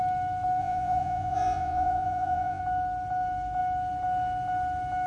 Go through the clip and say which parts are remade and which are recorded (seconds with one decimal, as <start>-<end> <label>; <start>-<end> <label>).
0.0-0.6 recorded; 0.6-2.6 remade; 2.6-5.1 recorded